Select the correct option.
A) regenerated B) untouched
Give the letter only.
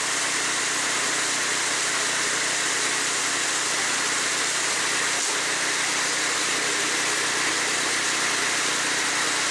B